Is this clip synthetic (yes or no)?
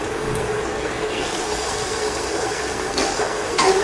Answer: yes